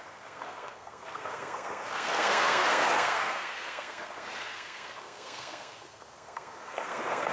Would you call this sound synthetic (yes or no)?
yes